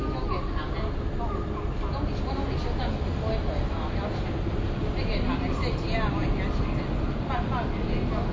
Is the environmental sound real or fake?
real